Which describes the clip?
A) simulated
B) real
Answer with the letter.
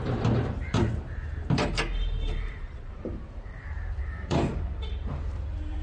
A